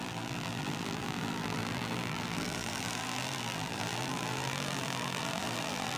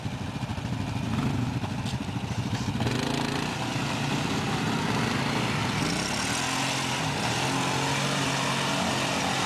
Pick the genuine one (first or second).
second